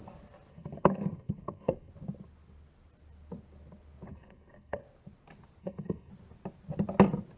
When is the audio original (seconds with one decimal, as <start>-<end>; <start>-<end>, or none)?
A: 0.0-0.5; 1.9-4.1; 4.8-5.6; 6.1-7.4

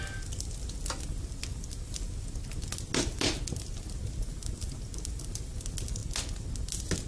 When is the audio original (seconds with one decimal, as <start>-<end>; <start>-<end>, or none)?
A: 0.0-7.1

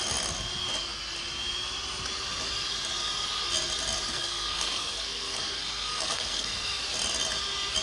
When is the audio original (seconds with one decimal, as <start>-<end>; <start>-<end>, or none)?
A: 0.0-4.1; 6.8-7.8

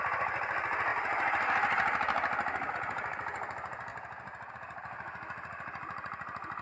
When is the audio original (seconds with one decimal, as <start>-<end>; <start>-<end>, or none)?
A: 0.0-6.6